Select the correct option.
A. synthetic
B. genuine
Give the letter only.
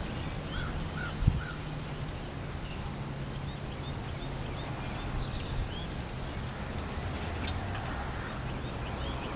B